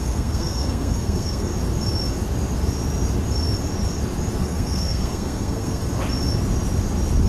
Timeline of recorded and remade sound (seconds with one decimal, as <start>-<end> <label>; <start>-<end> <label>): 0.0-1.5 remade; 1.5-4.4 recorded; 4.4-5.8 remade; 5.8-7.3 recorded